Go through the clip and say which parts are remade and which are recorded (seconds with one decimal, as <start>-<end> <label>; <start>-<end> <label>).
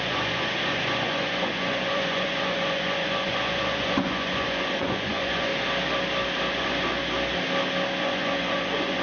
0.0-5.5 remade; 5.5-6.5 recorded; 6.5-7.0 remade; 7.0-8.0 recorded; 8.0-9.0 remade